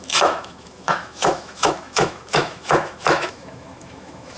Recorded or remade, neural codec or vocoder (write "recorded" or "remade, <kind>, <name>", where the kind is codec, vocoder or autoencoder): remade, autoencoder, DAC-VAE